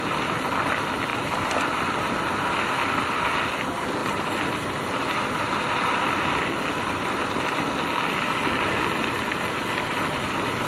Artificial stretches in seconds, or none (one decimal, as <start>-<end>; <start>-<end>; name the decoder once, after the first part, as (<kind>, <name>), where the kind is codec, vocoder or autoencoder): none